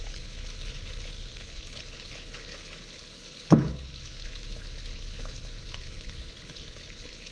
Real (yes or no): no